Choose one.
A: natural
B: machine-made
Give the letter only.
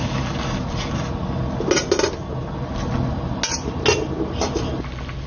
A